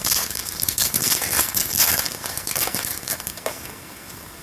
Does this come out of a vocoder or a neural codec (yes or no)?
yes